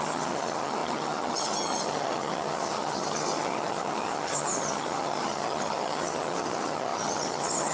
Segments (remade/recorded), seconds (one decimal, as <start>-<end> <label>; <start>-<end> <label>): 0.0-7.7 remade